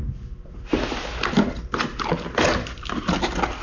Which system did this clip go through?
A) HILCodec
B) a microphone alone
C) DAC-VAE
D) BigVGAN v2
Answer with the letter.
B